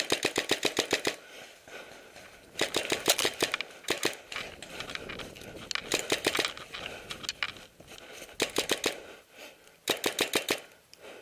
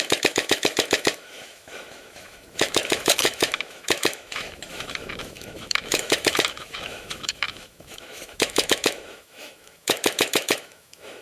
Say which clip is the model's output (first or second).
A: second